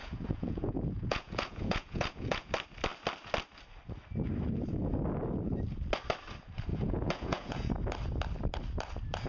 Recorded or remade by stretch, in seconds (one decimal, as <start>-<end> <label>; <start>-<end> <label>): 0.0-2.5 remade; 2.5-6.7 recorded; 6.7-7.7 remade; 7.7-9.3 recorded